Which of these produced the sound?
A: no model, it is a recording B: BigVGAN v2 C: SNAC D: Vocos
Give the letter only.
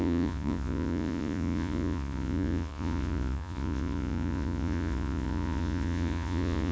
D